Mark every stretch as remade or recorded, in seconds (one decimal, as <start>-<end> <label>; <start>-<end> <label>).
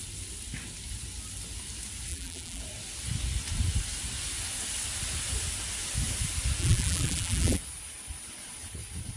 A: 0.0-2.1 recorded; 2.1-2.6 remade; 2.6-6.6 recorded; 6.6-7.6 remade; 7.6-9.2 recorded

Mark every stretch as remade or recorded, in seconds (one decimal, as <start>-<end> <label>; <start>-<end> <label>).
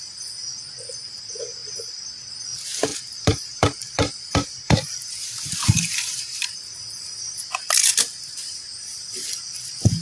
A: 0.0-2.9 recorded; 2.9-7.4 remade; 7.4-8.4 recorded; 8.4-9.3 remade; 9.3-10.0 recorded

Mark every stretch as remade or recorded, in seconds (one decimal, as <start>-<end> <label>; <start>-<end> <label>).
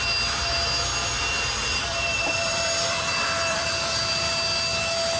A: 0.0-1.0 recorded; 1.0-4.1 remade; 4.1-5.2 recorded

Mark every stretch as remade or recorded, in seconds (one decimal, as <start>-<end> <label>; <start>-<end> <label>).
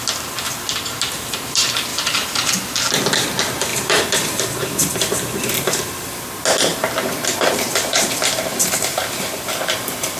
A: 0.0-1.9 recorded; 1.9-2.5 remade; 2.5-3.7 recorded; 3.7-5.9 remade; 5.9-6.7 recorded; 6.7-8.1 remade; 8.1-8.5 recorded; 8.5-9.5 remade; 9.5-10.2 recorded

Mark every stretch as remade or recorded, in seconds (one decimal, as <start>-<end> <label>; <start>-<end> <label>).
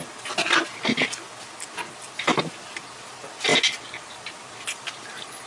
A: 0.0-5.5 recorded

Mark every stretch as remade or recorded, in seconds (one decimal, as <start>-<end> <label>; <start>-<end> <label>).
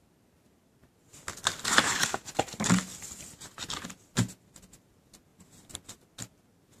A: 0.0-6.8 recorded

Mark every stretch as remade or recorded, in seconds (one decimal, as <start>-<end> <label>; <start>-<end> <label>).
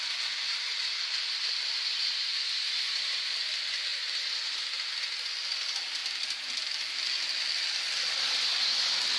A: 0.0-0.7 recorded; 0.7-1.8 remade; 1.8-3.9 recorded; 3.9-5.0 remade; 5.0-6.0 recorded; 6.0-8.0 remade; 8.0-9.2 recorded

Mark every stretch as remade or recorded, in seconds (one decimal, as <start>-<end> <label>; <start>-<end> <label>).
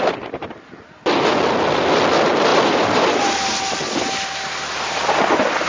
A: 0.0-2.5 recorded; 2.5-5.2 remade; 5.2-5.7 recorded